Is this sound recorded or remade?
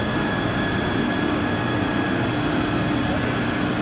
recorded